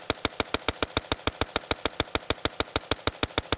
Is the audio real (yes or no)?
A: yes